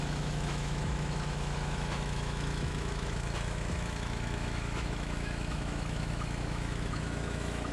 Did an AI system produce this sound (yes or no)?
yes